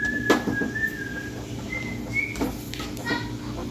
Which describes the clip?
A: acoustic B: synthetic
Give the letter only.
A